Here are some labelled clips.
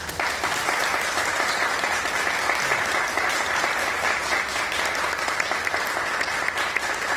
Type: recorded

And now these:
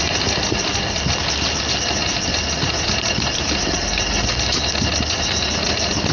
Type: recorded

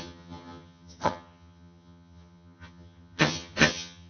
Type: remade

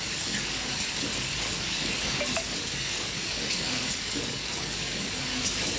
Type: remade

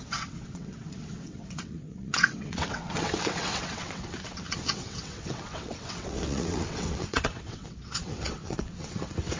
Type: remade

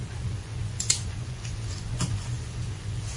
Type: remade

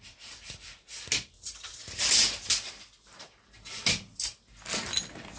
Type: recorded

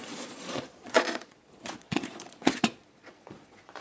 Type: remade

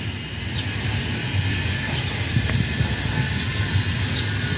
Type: recorded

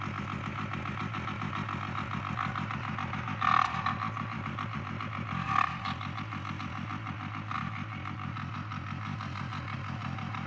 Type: recorded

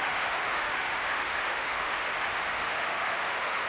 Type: remade